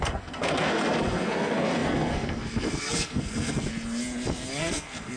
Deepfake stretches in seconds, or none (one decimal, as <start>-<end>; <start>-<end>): 0.0-3.7; 4.6-5.2